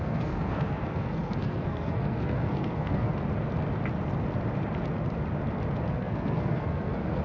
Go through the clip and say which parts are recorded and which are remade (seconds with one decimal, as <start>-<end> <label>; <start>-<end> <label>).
0.0-3.1 remade; 3.1-5.9 recorded; 5.9-7.2 remade